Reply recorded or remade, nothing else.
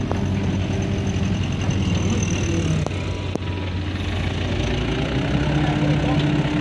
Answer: recorded